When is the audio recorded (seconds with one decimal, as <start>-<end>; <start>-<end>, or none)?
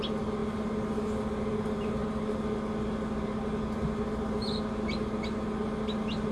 0.0-6.3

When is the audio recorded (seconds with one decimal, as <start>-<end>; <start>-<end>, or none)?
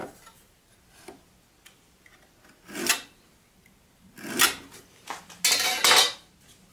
0.7-6.7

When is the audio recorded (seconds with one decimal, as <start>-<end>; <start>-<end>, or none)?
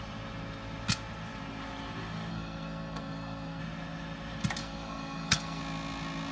0.0-2.3; 3.6-4.6; 5.6-6.3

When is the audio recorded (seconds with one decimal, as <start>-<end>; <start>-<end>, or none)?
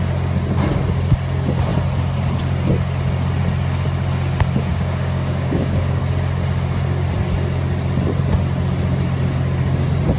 0.0-4.7; 6.0-10.2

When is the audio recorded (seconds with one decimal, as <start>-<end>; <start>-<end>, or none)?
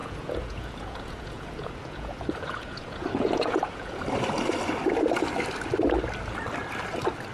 4.0-7.3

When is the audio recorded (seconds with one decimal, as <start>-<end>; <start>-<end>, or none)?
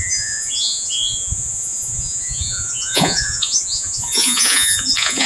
none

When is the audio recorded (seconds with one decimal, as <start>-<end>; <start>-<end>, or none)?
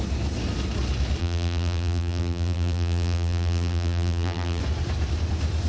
0.0-1.2; 4.6-5.7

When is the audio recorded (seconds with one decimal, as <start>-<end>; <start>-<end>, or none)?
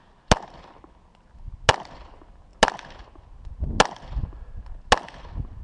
0.0-5.6